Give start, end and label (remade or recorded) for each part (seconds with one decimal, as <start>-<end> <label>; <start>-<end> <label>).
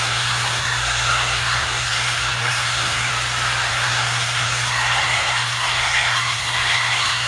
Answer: 0.0-3.1 remade; 3.1-3.7 recorded; 3.7-7.3 remade